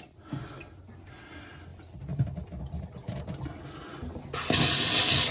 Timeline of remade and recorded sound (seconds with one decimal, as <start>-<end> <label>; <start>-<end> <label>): 0.0-5.3 recorded